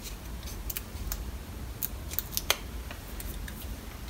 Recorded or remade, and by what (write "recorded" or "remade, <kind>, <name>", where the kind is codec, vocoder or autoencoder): recorded